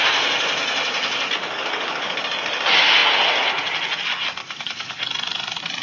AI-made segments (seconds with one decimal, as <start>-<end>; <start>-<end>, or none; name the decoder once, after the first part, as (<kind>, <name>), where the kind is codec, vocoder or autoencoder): 1.4-2.2 (codec, DAC); 4.4-5.0